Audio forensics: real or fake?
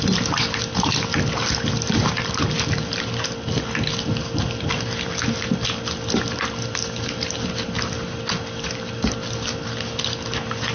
real